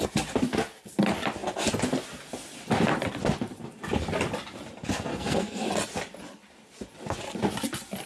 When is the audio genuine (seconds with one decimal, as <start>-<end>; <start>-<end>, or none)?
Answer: 0.0-5.1; 5.7-8.1